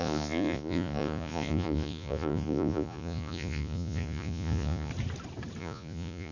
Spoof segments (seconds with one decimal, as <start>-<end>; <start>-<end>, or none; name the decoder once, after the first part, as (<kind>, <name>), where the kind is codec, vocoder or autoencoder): 0.0-4.9 (vocoder, Vocos); 5.6-6.3

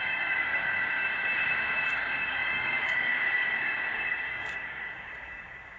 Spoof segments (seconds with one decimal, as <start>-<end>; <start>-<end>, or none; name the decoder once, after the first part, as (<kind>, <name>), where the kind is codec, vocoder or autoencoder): 0.0-1.3 (codec, DAC); 1.9-5.8

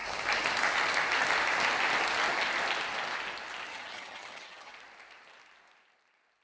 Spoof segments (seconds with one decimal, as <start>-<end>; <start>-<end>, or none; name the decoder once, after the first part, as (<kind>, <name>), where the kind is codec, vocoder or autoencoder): 3.7-4.7 (vocoder, HiFi-GAN)